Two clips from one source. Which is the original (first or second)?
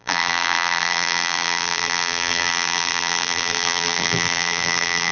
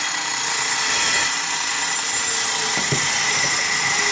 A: second